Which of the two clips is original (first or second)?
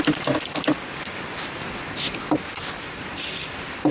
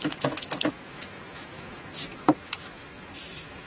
first